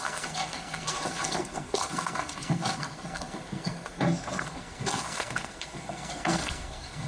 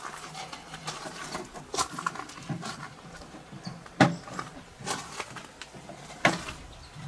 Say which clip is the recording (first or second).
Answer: second